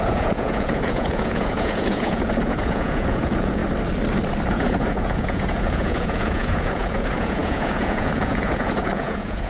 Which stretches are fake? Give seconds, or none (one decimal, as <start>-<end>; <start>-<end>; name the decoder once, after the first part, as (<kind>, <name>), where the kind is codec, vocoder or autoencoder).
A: 0.0-3.6 (vocoder, Vocos); 4.5-9.5